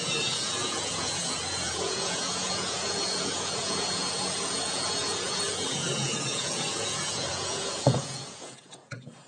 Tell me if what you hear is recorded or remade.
remade